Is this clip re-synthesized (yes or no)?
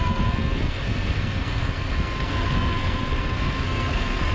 yes